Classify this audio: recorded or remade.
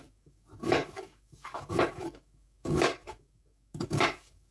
remade